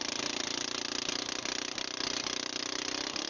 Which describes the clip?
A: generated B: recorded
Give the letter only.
B